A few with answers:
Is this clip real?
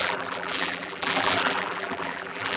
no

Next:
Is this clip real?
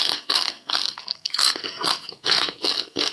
no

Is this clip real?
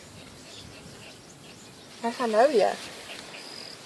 yes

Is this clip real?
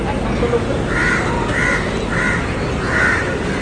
yes